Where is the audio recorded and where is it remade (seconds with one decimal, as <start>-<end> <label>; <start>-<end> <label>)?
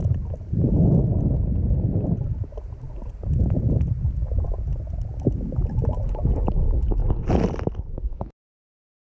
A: 0.0-0.7 remade; 0.7-2.5 recorded; 2.5-3.1 remade; 3.1-4.7 recorded; 4.7-5.7 remade; 5.7-9.1 recorded